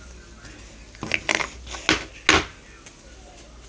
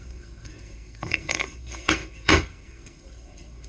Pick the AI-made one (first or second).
second